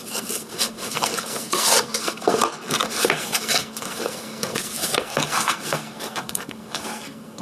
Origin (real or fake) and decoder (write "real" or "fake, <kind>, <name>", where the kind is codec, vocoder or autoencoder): fake, codec, SNAC